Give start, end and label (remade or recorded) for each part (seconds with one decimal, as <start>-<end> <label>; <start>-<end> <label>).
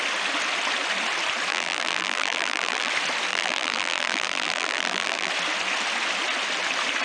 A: 0.0-1.5 recorded; 1.5-2.9 remade; 2.9-3.3 recorded; 3.3-5.3 remade; 5.3-7.0 recorded